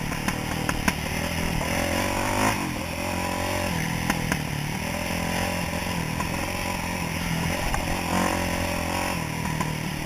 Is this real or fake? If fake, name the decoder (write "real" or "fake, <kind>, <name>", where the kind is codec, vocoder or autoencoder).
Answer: real